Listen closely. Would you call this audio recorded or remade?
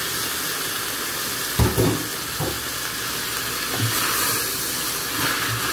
recorded